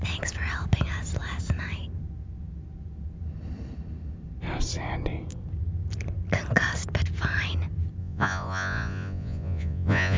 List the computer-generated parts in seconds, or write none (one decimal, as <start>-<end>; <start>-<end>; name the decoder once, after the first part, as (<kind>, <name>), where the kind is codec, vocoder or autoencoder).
8.0-10.2 (vocoder, Vocos)